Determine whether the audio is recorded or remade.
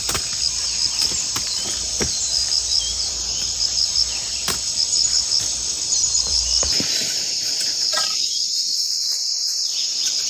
remade